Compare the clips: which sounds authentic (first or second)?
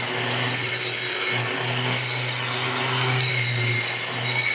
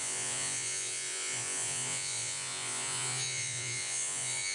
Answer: first